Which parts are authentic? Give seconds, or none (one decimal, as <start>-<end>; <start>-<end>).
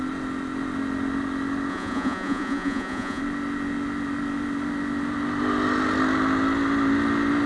0.0-1.7; 3.2-7.5